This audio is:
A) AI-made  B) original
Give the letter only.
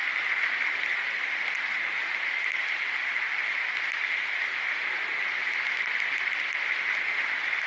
B